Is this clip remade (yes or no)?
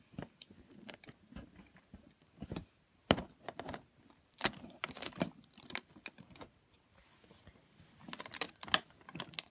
no